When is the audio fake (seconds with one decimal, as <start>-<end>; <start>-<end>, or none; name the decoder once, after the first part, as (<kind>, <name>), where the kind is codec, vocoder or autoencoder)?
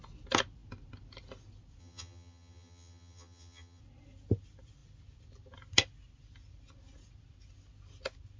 1.8-3.8 (vocoder, HiFi-GAN)